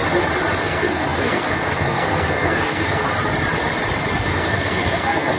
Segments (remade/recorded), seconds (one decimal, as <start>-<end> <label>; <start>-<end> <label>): 0.0-0.6 recorded; 0.6-3.1 remade; 3.1-4.1 recorded; 4.1-5.4 remade

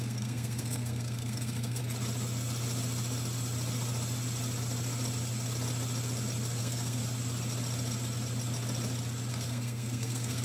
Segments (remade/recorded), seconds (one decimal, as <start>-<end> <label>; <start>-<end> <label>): 0.0-1.8 remade; 1.8-6.6 recorded; 6.6-7.0 remade; 7.0-9.3 recorded; 9.3-10.4 remade

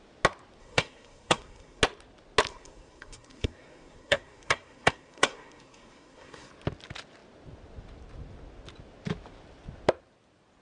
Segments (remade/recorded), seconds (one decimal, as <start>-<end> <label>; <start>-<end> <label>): 0.0-0.6 recorded; 0.6-1.8 remade; 1.8-2.5 recorded; 2.5-6.5 remade; 6.5-10.6 recorded

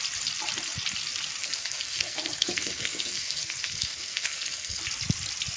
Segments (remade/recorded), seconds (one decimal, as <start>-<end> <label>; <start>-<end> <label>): 0.0-1.4 recorded; 1.4-4.8 remade; 4.8-5.6 recorded

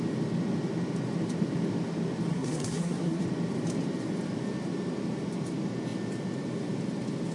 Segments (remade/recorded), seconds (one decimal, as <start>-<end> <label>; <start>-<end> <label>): 0.0-2.3 recorded; 2.3-3.2 remade; 3.2-7.3 recorded

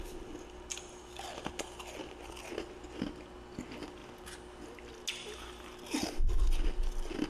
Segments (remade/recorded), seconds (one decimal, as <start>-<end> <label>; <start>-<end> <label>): 0.0-7.3 recorded